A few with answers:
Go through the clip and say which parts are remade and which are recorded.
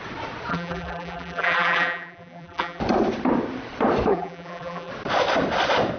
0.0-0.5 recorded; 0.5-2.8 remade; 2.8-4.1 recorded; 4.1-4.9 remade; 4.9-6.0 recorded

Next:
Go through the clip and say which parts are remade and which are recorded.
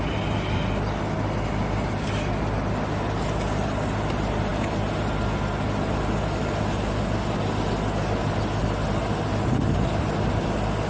0.0-10.9 recorded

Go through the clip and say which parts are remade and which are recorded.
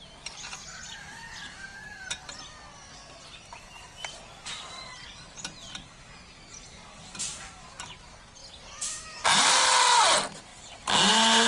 0.0-11.5 recorded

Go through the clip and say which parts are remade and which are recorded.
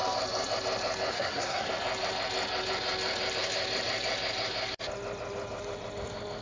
0.0-1.1 recorded; 1.1-1.7 remade; 1.7-6.4 recorded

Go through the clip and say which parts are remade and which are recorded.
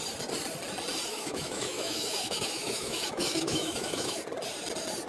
0.0-1.1 recorded; 1.1-4.2 remade; 4.2-5.1 recorded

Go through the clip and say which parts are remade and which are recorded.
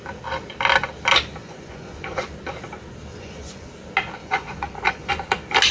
0.0-1.4 recorded; 1.4-2.3 remade; 2.3-3.1 recorded; 3.1-3.7 remade; 3.7-4.2 recorded; 4.2-5.1 remade; 5.1-5.7 recorded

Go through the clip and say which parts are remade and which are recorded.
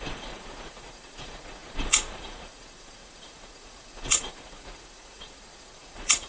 0.0-6.3 remade